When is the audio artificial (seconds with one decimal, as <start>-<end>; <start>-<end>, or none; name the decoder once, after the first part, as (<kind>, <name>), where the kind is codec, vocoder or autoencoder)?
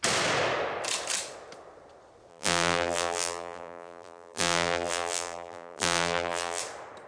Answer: 2.3-6.6 (vocoder, BigVGAN v2)